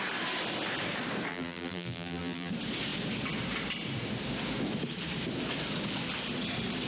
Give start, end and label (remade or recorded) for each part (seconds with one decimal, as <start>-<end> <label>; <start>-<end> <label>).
0.0-1.3 recorded; 1.3-2.5 remade; 2.5-6.9 recorded